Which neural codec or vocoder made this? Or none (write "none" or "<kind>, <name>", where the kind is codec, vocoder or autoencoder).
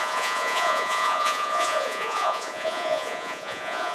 vocoder, Vocos